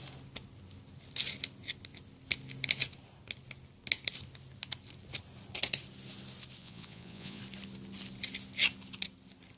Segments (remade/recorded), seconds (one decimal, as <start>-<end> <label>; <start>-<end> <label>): 0.0-6.6 recorded; 6.6-7.4 remade; 7.4-9.6 recorded